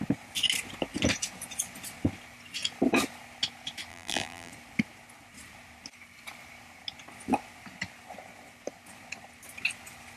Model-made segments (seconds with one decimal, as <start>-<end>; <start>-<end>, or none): 3.9-4.5